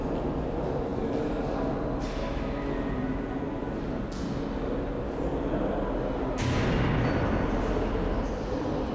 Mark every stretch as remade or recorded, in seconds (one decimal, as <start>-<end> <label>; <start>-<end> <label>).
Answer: 0.0-8.9 recorded